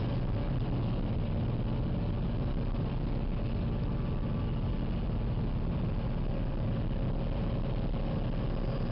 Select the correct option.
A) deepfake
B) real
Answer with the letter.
B